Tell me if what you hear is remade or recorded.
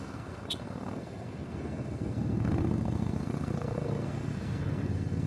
remade